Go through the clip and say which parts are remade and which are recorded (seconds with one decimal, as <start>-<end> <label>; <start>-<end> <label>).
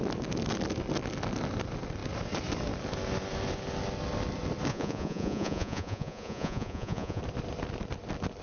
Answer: 0.0-4.7 recorded; 4.7-7.2 remade; 7.2-8.4 recorded